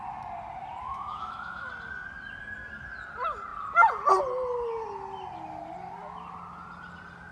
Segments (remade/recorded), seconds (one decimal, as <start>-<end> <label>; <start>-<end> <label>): 0.0-0.8 recorded; 0.8-1.7 remade; 1.7-7.3 recorded